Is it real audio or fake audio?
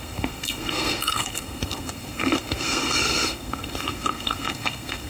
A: fake